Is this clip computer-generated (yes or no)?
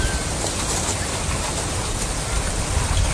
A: no